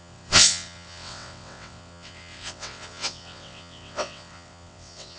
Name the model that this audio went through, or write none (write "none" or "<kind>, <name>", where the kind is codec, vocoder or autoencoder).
vocoder, WaveNeXt